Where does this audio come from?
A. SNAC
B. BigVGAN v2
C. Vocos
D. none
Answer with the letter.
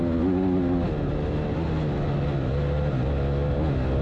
D